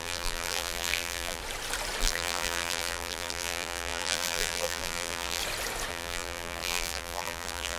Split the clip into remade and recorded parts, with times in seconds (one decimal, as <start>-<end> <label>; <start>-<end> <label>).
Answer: 0.0-1.4 remade; 1.4-2.0 recorded; 2.0-5.4 remade; 5.4-5.9 recorded; 5.9-7.8 remade